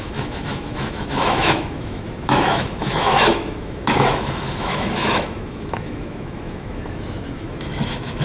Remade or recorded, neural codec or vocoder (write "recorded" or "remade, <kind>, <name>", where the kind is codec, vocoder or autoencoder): remade, autoencoder, DAC-VAE